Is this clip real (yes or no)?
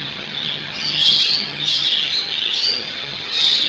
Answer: no